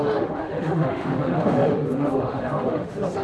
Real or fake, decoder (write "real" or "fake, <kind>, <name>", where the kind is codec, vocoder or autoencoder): fake, autoencoder, DAC-VAE